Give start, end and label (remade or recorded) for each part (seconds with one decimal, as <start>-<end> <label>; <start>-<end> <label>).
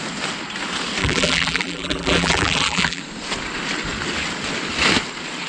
0.0-1.0 recorded; 1.0-3.0 remade; 3.0-5.5 recorded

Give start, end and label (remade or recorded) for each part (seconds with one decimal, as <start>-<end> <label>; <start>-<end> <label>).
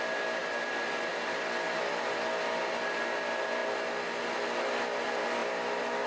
0.0-6.1 recorded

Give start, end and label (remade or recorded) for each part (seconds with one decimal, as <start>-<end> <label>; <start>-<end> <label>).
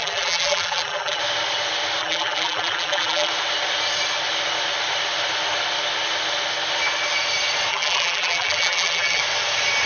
0.0-1.2 remade; 1.2-2.0 recorded; 2.0-3.3 remade; 3.3-7.7 recorded; 7.7-9.2 remade; 9.2-9.9 recorded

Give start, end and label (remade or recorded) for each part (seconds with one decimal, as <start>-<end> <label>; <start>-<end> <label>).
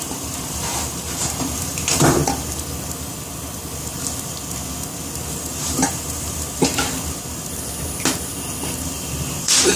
0.0-2.2 remade; 2.2-5.3 recorded; 5.3-6.7 remade; 6.7-9.4 recorded; 9.4-9.8 remade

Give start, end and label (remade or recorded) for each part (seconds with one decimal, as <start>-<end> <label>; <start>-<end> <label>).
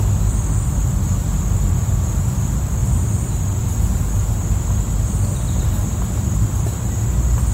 0.0-7.5 recorded